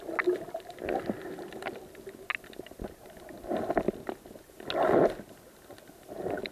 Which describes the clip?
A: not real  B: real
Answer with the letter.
B